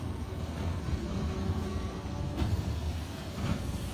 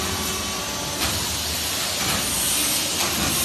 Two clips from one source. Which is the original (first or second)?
second